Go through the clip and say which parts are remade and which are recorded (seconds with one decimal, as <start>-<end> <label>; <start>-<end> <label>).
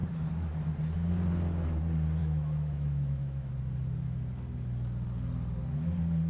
0.0-0.5 remade; 0.5-2.2 recorded; 2.2-3.5 remade; 3.5-6.3 recorded